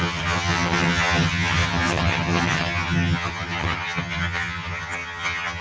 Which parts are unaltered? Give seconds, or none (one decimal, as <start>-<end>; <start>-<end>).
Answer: none